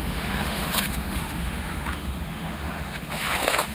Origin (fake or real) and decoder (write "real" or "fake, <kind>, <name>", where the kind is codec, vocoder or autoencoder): fake, autoencoder, DAC-VAE